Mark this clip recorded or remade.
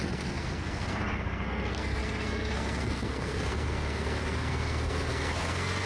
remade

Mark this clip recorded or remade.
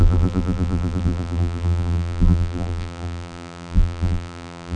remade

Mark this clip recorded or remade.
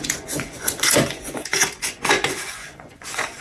remade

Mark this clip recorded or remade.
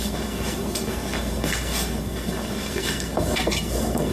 remade